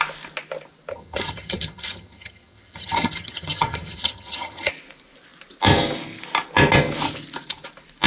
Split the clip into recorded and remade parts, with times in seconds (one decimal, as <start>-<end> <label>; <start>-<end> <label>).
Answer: 0.0-0.9 recorded; 0.9-4.7 remade; 4.7-8.1 recorded